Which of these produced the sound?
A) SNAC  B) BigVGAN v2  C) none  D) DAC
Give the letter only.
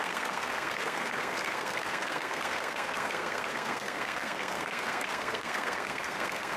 A